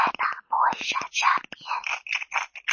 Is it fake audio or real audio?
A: real